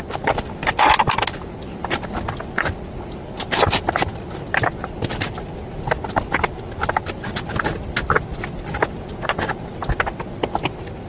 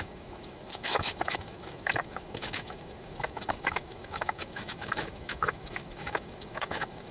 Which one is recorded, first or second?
first